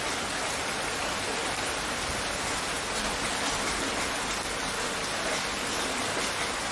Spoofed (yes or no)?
no